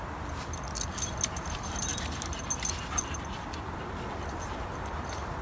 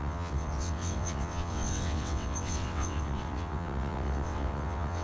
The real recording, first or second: first